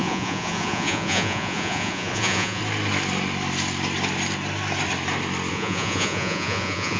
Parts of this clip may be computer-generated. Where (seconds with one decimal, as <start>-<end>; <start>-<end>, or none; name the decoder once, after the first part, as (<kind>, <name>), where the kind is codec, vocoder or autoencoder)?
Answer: 0.0-2.6 (vocoder, Vocos); 5.5-7.0